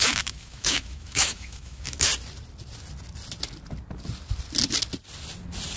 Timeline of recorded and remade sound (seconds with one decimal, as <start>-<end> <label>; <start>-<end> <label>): 0.0-2.1 remade; 2.1-5.8 recorded